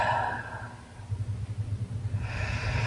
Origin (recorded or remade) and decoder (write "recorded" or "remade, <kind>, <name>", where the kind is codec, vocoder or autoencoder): recorded